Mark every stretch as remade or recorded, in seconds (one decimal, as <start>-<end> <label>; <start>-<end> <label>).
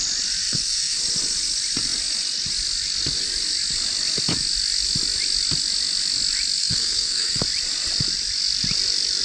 0.0-0.4 recorded; 0.4-1.0 remade; 1.0-6.6 recorded; 6.6-7.4 remade; 7.4-9.2 recorded